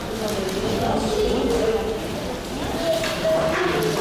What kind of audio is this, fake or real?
real